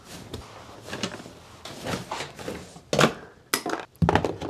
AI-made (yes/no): no